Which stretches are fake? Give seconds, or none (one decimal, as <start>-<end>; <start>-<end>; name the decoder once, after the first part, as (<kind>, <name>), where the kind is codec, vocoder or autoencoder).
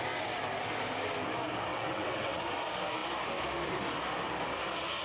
1.7-2.4 (vocoder, WaveNeXt)